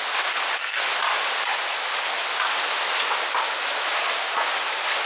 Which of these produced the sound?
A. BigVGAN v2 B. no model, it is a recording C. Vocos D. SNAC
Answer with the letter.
B